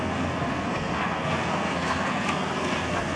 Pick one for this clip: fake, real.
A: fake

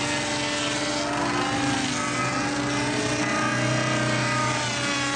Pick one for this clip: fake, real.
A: real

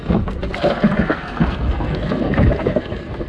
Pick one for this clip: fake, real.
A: fake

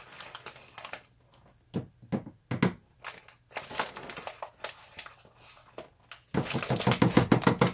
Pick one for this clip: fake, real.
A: real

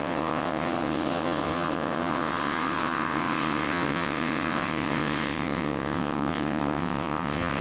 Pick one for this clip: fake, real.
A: fake